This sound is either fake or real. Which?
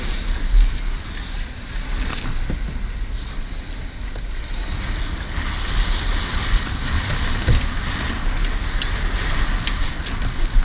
real